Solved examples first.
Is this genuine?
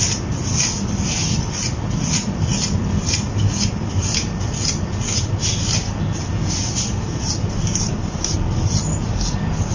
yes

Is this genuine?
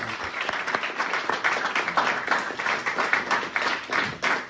yes